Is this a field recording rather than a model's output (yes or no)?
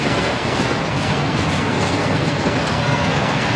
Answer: no